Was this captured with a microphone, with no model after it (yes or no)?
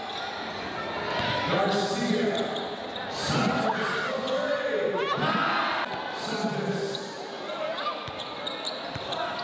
yes